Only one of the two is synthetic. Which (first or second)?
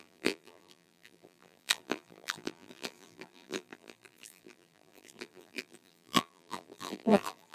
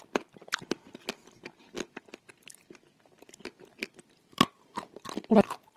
first